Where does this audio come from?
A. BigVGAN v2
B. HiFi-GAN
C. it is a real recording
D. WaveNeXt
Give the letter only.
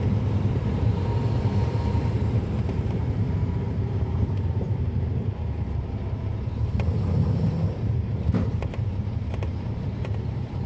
A